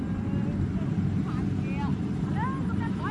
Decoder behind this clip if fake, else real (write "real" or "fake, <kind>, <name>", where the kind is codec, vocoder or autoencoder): real